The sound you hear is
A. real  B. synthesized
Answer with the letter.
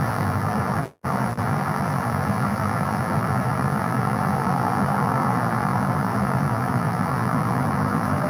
B